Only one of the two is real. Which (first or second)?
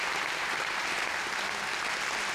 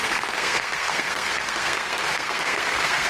first